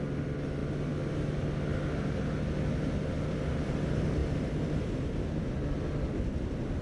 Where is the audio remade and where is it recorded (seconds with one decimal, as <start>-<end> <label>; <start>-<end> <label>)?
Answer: 0.0-6.8 recorded